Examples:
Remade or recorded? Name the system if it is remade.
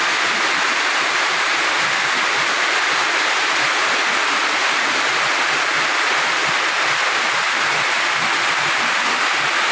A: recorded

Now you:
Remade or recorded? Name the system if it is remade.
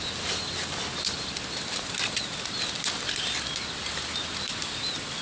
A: recorded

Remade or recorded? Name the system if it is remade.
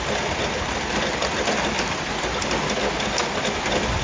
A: recorded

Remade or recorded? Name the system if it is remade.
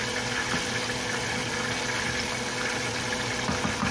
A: recorded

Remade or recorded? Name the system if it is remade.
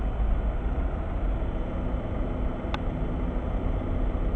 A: recorded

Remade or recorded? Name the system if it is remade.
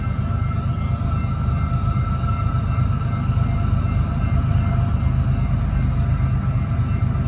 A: recorded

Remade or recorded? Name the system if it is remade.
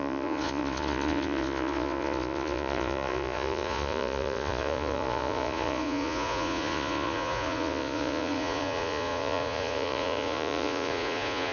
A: remade, vocoder, Vocos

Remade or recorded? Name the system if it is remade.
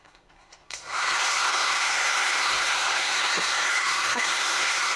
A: remade, codec, SNAC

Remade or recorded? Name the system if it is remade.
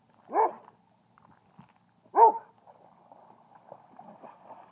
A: recorded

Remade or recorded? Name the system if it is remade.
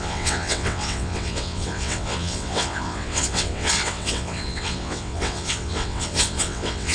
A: remade, vocoder, WaveNeXt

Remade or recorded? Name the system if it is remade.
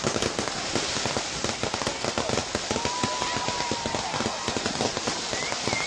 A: recorded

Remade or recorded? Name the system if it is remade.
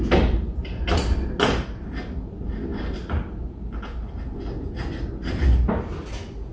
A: recorded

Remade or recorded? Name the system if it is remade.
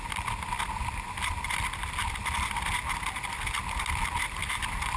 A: recorded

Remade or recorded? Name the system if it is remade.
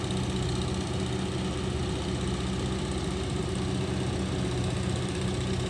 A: recorded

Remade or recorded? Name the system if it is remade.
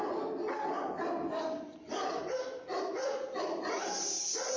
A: recorded